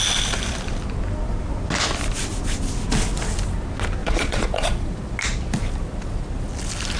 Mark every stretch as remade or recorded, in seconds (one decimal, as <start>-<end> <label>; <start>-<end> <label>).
0.0-4.0 recorded; 4.0-4.9 remade; 4.9-7.0 recorded